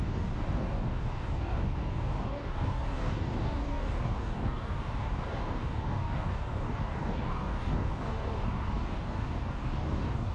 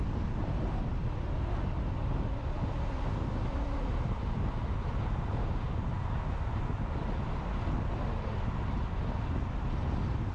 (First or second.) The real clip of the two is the second